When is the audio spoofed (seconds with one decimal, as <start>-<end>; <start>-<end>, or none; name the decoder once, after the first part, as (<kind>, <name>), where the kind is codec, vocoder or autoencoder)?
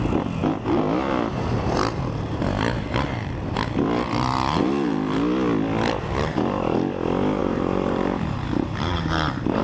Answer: 7.4-9.6 (vocoder, BigVGAN v2)